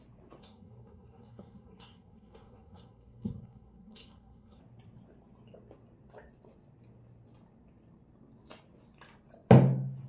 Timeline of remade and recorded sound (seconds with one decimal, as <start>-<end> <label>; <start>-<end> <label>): 0.0-0.4 recorded; 0.4-4.6 remade; 4.6-10.1 recorded